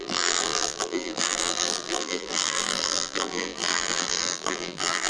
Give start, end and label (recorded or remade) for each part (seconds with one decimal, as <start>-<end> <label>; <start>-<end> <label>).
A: 0.0-5.1 remade